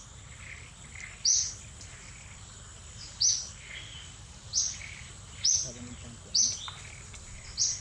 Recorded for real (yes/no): yes